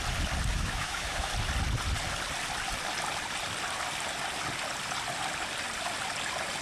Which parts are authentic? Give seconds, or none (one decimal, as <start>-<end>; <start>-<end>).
0.0-0.5; 1.3-6.6